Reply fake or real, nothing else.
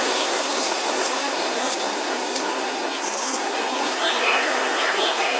fake